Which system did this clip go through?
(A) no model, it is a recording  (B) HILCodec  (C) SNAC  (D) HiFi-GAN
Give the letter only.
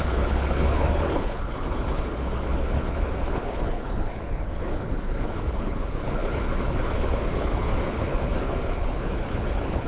B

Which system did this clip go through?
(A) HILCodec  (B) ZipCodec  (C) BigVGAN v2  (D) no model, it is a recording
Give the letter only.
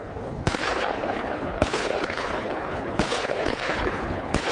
A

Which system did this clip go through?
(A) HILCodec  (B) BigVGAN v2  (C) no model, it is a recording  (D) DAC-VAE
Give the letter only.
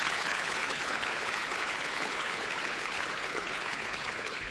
A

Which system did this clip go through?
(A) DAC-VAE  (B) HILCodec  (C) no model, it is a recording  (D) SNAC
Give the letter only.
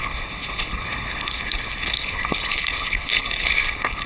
B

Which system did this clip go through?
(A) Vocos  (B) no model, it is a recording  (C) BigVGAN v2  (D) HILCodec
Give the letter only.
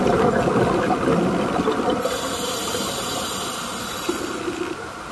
B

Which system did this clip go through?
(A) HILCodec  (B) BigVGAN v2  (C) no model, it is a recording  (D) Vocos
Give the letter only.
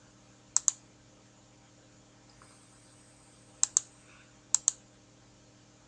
C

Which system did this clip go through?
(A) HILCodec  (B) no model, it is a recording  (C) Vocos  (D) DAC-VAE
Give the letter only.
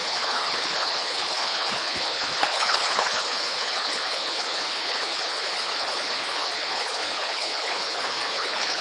A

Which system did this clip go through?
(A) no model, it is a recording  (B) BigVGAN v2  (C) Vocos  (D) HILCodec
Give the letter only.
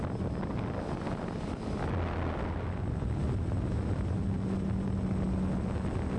A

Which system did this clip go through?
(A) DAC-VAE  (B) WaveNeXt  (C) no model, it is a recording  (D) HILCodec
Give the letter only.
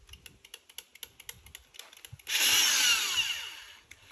C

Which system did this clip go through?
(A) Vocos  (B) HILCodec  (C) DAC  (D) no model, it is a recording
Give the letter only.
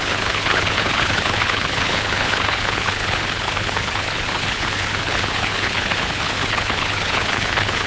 B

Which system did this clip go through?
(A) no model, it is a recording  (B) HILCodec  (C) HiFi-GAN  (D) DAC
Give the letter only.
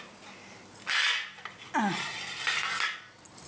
A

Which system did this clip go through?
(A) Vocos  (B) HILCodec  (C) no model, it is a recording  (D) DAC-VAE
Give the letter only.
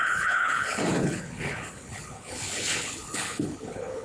B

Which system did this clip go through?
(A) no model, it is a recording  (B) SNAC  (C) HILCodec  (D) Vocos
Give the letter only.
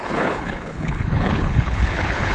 C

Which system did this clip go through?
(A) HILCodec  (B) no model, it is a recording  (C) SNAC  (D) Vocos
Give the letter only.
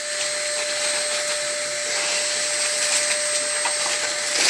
B